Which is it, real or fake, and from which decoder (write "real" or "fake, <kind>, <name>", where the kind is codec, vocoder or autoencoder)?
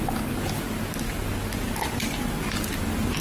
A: real